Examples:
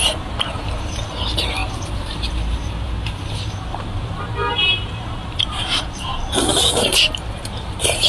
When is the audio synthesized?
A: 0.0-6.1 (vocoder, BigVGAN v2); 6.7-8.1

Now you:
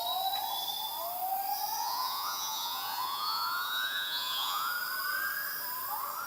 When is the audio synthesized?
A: 1.8-4.7 (vocoder, Vocos)

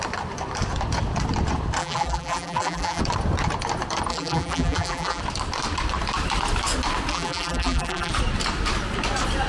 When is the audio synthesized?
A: 1.8-3.0 (vocoder, BigVGAN v2); 4.1-5.2; 7.1-8.1

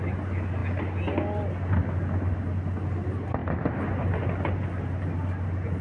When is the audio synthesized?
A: none

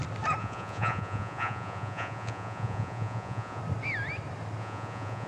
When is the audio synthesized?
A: 0.4-3.6 (vocoder, Vocos); 4.6-5.3

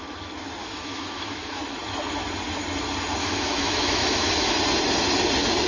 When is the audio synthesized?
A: 0.6-1.6 (autoencoder, DAC-VAE); 3.2-4.6

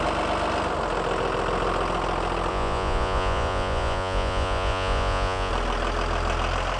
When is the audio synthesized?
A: 2.5-5.5 (vocoder, Vocos)

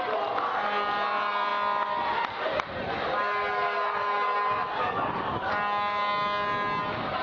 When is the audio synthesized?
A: none